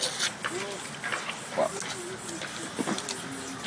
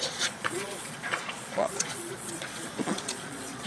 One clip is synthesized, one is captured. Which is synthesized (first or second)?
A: second